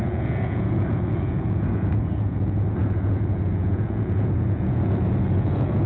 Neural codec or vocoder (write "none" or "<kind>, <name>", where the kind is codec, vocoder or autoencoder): vocoder, Vocos